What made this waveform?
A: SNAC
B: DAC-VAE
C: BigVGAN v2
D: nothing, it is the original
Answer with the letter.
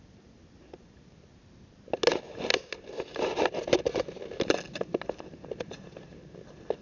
D